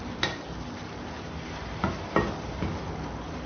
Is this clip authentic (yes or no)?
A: yes